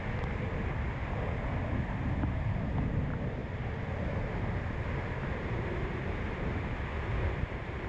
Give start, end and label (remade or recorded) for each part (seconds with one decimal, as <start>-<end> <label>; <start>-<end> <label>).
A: 0.0-7.9 recorded